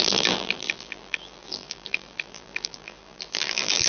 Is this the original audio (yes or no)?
no